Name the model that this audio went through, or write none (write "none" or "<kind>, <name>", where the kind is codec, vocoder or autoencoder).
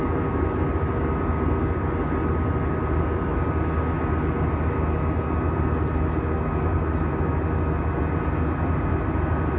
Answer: none